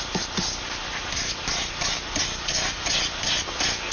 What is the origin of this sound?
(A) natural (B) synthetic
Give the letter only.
A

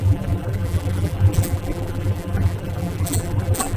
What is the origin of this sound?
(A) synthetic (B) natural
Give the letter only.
A